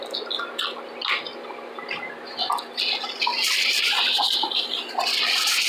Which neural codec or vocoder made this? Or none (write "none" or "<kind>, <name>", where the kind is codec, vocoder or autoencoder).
none